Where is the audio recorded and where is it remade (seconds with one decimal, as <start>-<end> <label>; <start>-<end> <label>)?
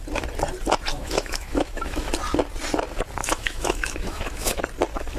0.0-0.9 recorded; 0.9-2.1 remade; 2.1-3.2 recorded; 3.2-4.6 remade; 4.6-5.2 recorded